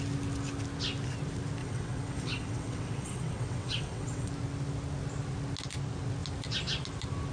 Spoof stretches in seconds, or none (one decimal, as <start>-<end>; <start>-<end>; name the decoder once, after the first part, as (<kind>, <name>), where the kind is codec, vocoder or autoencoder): 1.6-4.3 (vocoder, WaveNeXt)